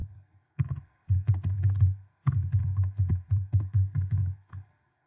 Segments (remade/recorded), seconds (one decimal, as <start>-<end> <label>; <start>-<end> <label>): 0.0-5.1 remade